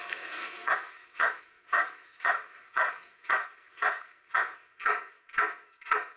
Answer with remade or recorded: remade